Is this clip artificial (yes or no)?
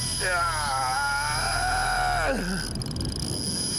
no